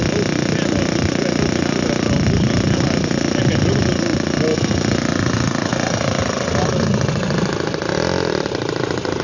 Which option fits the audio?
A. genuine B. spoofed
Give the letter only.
A